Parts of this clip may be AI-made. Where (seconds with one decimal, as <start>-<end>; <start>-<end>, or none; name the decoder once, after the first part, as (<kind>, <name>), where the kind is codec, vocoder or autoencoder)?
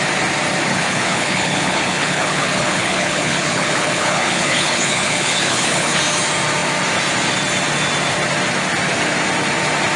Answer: 0.7-6.0 (codec, HILCodec)